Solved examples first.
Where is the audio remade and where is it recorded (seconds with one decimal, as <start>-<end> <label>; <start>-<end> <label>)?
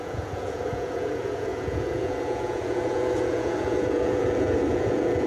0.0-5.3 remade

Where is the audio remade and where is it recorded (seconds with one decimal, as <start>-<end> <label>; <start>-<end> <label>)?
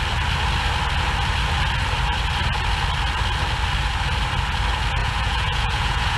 0.0-5.0 recorded; 5.0-6.2 remade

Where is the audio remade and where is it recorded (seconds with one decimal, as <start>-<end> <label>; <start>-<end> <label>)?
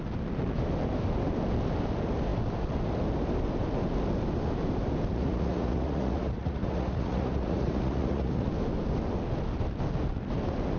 0.0-5.1 recorded; 5.1-8.5 remade; 8.5-10.8 recorded